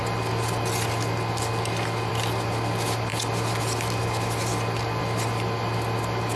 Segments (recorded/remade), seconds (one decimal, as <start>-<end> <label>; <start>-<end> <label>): 0.0-6.4 recorded